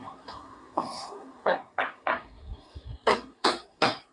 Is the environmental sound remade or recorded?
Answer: remade